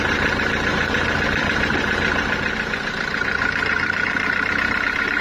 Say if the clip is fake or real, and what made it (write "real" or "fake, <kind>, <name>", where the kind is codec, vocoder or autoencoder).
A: fake, vocoder, BigVGAN v2